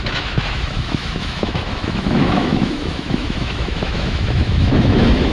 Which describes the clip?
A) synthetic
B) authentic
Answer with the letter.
A